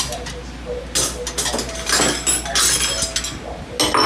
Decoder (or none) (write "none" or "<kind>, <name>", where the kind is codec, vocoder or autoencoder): none